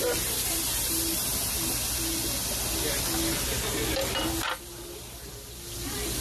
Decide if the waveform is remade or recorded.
recorded